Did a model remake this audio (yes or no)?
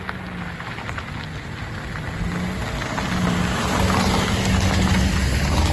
no